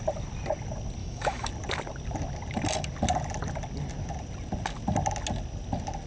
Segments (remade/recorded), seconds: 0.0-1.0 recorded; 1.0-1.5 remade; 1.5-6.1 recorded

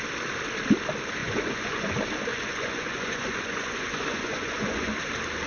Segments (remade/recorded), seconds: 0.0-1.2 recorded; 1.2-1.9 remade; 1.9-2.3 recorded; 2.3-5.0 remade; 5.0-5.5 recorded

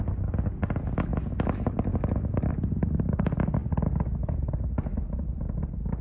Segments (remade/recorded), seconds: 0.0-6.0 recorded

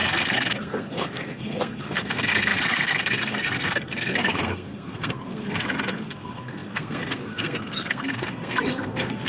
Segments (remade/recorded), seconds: 0.0-9.3 remade

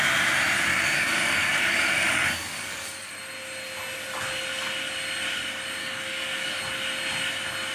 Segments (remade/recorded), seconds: 0.0-0.7 recorded; 0.7-3.1 remade; 3.1-5.8 recorded; 5.8-6.6 remade; 6.6-7.7 recorded

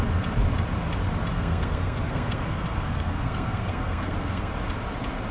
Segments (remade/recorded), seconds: 0.0-1.3 recorded; 1.3-4.5 remade; 4.5-5.3 recorded

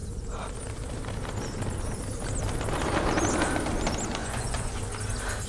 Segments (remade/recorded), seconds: 0.0-4.2 recorded; 4.2-4.8 remade; 4.8-5.5 recorded

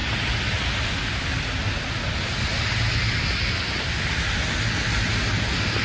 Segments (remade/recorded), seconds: 0.0-5.8 recorded